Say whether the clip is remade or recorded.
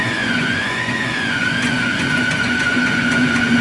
remade